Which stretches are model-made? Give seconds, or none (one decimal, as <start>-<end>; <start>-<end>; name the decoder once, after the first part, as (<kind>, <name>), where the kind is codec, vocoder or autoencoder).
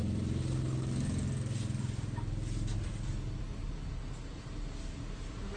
none